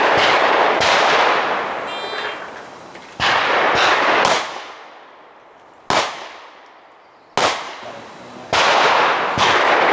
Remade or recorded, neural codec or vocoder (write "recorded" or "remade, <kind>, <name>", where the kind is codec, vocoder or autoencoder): recorded